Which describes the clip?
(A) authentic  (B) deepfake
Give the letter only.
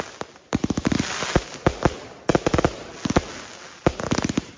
A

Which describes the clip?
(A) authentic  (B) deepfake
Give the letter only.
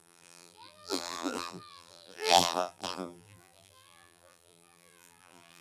B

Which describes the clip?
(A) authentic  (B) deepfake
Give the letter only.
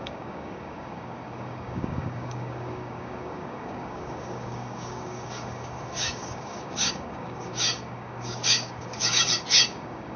B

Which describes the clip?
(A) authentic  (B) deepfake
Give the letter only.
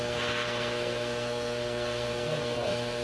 B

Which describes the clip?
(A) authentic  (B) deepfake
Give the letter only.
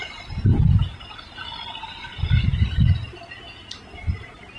A